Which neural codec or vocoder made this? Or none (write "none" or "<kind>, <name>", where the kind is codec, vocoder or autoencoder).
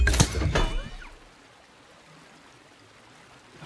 none